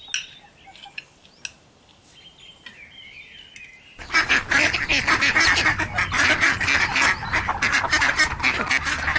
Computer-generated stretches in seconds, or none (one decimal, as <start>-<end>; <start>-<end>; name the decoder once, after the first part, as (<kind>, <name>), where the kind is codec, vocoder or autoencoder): none

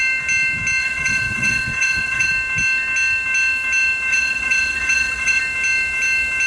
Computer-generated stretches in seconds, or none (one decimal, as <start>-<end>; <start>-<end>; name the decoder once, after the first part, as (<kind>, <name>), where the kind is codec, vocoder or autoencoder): 0.8-2.3 (vocoder, WaveNeXt); 4.1-5.4

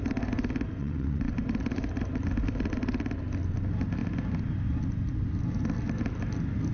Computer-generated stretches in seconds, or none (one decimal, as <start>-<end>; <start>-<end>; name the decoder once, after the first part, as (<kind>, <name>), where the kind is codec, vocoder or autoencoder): 0.8-1.3 (vocoder, WaveNeXt)